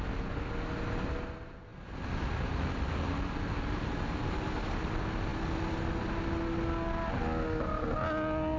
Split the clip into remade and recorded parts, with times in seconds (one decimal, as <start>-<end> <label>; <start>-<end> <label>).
0.0-8.6 recorded